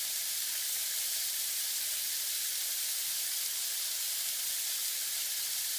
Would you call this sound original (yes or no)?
yes